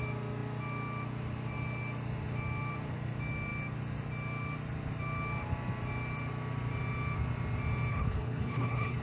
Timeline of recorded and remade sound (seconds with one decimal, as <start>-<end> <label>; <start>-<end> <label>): 0.0-7.9 recorded; 7.9-9.0 remade